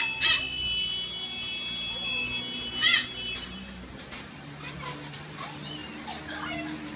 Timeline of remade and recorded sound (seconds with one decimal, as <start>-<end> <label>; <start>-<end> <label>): 0.0-3.0 recorded; 3.0-5.3 remade; 5.3-7.0 recorded